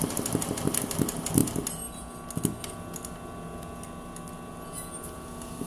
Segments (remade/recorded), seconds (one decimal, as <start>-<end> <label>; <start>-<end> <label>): 0.0-5.7 recorded